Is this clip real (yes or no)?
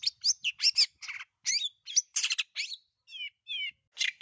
yes